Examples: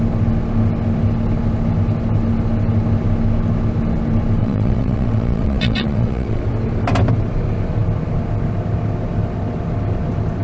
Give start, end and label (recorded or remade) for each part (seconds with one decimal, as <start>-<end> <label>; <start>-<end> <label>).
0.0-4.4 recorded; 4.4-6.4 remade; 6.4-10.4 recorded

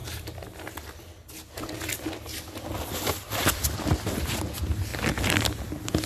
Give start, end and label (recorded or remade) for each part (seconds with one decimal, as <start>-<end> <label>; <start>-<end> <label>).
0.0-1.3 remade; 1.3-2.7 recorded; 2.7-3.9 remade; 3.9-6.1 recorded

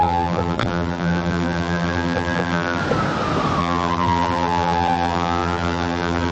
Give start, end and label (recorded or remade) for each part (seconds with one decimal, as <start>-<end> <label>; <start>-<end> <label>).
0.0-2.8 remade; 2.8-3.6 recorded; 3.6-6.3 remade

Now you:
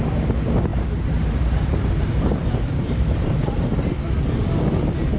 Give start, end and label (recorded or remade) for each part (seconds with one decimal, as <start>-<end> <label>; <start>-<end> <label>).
0.0-0.7 recorded; 0.7-3.8 remade; 3.8-5.2 recorded

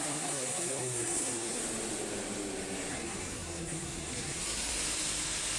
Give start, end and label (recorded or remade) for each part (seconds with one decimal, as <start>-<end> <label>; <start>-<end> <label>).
0.0-1.6 remade; 1.6-2.9 recorded; 2.9-4.7 remade; 4.7-5.6 recorded

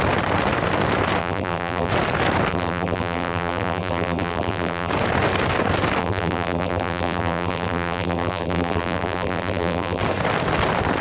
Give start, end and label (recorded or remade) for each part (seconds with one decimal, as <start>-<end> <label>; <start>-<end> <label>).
0.0-1.2 recorded; 1.2-1.9 remade; 1.9-2.5 recorded; 2.5-4.9 remade; 4.9-6.0 recorded; 6.0-10.0 remade; 10.0-11.0 recorded

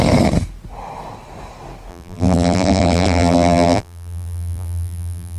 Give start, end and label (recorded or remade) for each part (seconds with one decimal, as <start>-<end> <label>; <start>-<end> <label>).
0.0-1.9 recorded; 1.9-5.4 remade

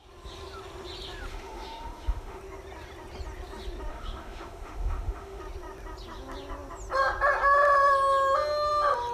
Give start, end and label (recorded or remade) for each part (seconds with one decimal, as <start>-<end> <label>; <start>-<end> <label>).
0.0-1.3 recorded; 1.3-2.4 remade; 2.4-3.9 recorded; 3.9-5.4 remade; 5.4-9.1 recorded